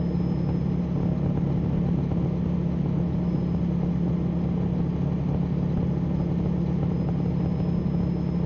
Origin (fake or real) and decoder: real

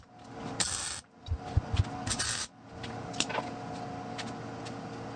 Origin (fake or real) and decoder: real